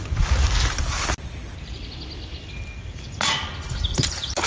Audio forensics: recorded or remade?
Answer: recorded